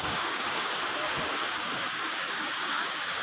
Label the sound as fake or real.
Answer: fake